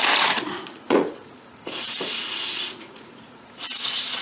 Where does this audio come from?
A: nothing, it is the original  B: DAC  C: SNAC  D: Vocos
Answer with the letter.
D